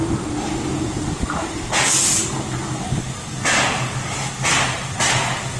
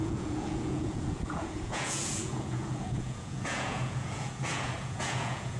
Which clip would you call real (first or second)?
first